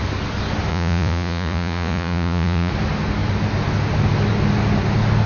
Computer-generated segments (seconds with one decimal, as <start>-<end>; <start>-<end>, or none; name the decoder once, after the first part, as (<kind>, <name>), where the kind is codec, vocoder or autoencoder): 0.7-2.7 (vocoder, Vocos)